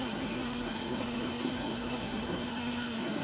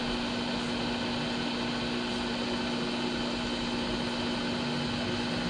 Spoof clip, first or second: first